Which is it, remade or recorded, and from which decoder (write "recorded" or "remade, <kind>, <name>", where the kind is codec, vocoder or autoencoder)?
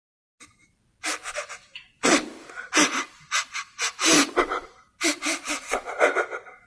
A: recorded